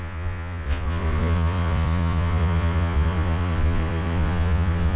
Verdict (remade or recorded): remade